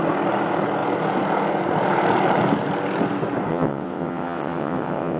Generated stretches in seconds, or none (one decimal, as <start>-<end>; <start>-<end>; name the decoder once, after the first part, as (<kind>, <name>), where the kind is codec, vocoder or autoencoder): 3.5-5.2 (vocoder, WaveNeXt)